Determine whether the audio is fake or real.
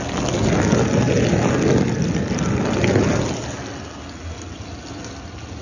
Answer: real